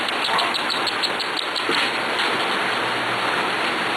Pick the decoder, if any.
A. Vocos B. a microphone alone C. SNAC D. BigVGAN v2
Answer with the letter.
B